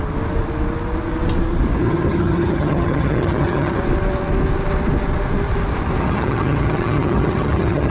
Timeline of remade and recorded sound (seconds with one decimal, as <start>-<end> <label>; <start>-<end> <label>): 0.0-1.8 recorded; 1.8-3.8 remade; 3.8-6.0 recorded; 6.0-7.9 remade